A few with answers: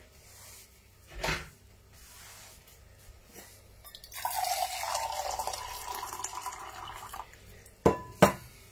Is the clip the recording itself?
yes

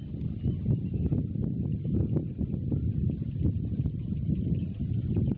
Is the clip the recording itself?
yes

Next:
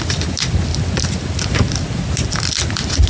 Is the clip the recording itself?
yes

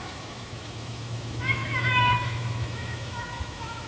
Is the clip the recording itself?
no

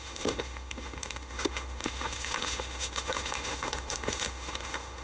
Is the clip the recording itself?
no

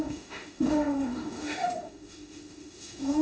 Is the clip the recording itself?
no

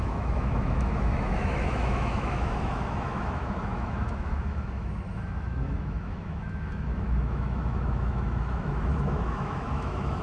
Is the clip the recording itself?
no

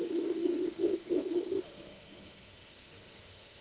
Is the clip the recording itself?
no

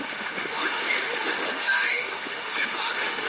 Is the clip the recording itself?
no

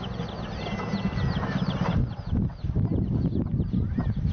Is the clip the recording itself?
yes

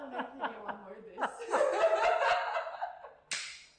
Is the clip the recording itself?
yes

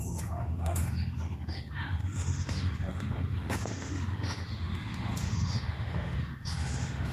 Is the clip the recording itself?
no